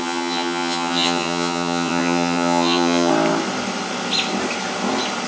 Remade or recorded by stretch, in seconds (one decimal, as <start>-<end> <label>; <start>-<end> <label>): 0.0-3.1 remade; 3.1-5.3 recorded